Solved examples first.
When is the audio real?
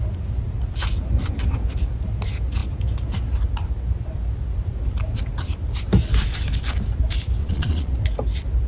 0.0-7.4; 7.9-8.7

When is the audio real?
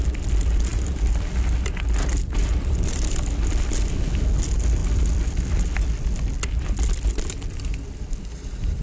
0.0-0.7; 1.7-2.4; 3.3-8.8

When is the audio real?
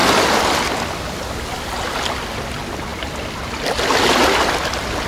0.0-5.1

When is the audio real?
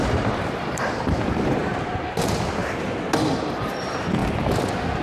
1.6-2.2; 2.6-3.8; 4.2-5.0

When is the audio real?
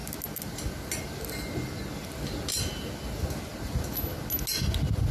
0.0-5.1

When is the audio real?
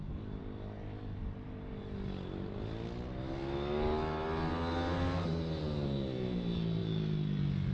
0.0-7.7